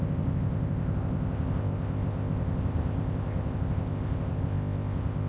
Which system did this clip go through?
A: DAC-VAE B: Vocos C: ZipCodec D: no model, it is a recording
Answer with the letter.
C